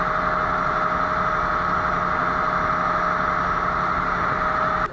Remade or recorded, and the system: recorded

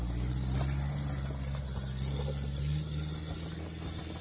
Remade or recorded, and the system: recorded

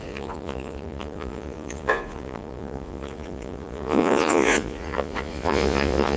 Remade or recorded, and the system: remade, vocoder, Vocos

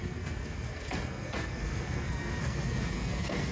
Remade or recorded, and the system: remade, codec, SNAC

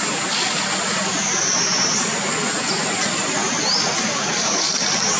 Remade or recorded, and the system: recorded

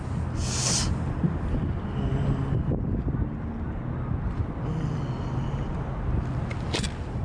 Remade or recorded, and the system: recorded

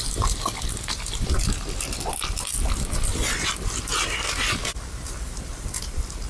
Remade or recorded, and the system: recorded